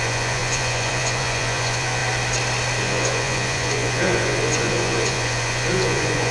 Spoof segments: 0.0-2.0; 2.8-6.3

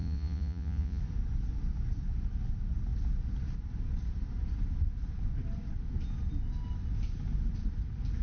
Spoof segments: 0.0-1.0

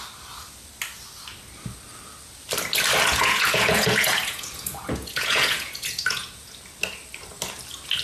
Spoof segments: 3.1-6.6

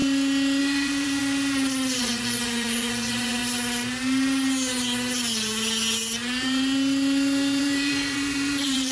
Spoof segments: 0.6-1.2; 2.0-3.4; 7.6-8.9

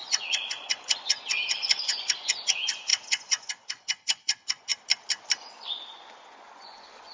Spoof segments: 0.0-4.7; 5.9-7.1